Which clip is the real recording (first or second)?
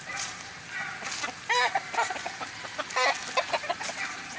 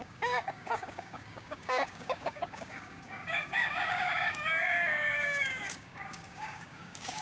first